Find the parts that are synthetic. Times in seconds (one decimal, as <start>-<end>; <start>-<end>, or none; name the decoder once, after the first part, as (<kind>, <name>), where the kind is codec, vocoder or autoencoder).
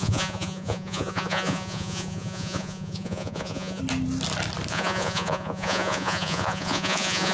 0.0-3.8 (vocoder, Vocos); 4.7-7.3